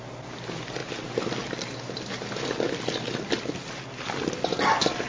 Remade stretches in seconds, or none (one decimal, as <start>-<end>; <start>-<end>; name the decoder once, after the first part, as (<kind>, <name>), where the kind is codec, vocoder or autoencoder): none